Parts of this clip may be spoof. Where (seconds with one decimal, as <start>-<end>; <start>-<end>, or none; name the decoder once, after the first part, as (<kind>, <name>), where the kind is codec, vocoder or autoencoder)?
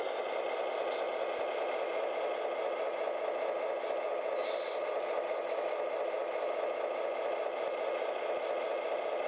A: 4.4-5.4 (vocoder, BigVGAN v2)